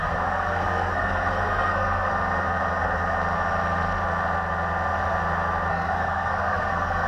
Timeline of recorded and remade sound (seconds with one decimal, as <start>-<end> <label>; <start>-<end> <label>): 0.0-2.1 remade; 2.1-5.7 recorded; 5.7-7.1 remade